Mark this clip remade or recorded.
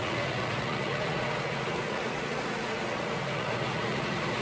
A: remade